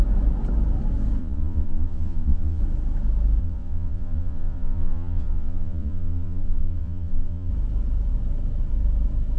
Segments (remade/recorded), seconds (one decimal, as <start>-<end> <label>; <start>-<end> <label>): 0.0-1.2 recorded; 1.2-2.6 remade; 2.6-3.4 recorded; 3.4-7.5 remade; 7.5-9.4 recorded